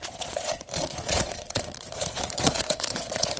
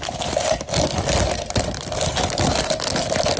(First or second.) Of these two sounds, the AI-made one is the first